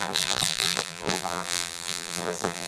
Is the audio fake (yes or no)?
yes